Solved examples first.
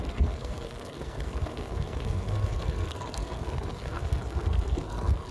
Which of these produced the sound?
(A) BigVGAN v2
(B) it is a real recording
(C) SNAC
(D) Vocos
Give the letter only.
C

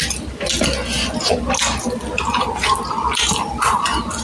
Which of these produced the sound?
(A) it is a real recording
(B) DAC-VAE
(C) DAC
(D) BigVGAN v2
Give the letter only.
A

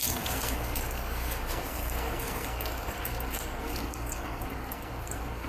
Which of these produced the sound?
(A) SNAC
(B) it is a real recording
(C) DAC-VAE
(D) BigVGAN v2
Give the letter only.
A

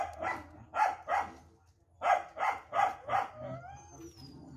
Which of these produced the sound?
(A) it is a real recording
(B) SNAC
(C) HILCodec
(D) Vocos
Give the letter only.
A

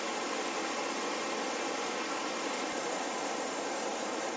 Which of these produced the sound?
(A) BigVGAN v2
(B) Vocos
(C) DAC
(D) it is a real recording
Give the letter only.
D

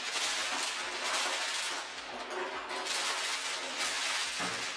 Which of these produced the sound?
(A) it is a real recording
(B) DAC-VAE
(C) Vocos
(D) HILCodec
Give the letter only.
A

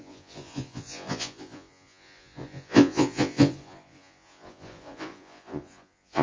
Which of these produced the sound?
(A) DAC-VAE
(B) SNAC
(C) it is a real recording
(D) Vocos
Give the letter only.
D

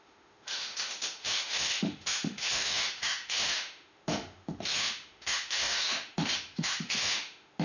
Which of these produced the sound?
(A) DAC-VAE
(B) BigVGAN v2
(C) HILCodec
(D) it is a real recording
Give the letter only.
A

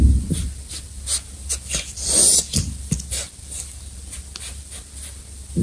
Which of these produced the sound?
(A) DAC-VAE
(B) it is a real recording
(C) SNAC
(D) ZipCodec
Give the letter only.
B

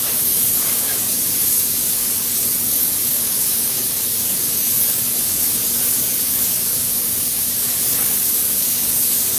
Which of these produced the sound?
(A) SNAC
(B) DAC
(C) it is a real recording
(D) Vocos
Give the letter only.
B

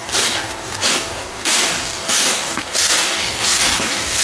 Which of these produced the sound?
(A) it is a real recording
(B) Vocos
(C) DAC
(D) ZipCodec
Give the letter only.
C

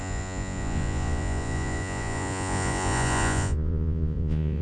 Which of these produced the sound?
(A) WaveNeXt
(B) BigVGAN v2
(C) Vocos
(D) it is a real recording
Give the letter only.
C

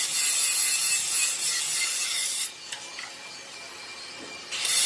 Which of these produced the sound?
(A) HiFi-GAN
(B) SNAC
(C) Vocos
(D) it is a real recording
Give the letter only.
D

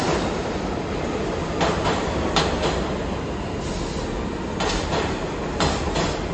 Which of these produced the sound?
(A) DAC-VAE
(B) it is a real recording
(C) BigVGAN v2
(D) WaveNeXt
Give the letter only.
B